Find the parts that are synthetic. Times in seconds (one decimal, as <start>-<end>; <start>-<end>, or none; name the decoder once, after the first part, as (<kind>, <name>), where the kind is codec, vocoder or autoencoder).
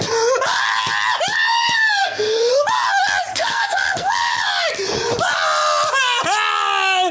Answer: 2.0-2.5 (codec, SNAC); 3.3-4.4